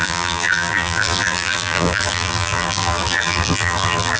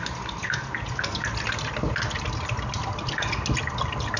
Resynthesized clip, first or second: first